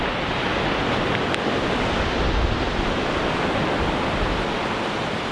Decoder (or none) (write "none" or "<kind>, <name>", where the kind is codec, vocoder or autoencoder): none